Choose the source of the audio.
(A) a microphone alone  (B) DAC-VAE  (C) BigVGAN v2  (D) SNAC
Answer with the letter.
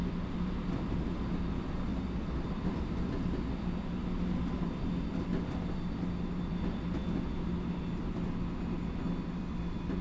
A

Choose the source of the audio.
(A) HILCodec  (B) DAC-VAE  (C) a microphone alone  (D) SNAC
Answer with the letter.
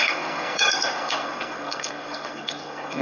D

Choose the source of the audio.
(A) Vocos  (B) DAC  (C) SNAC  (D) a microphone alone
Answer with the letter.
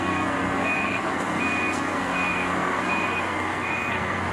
C